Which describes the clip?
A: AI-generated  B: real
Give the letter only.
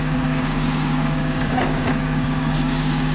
A